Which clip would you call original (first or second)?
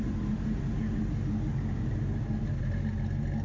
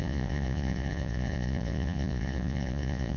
first